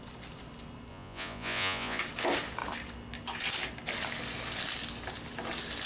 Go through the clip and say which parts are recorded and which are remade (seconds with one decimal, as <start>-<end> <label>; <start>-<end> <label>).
0.0-0.9 recorded; 0.9-2.0 remade; 2.0-5.9 recorded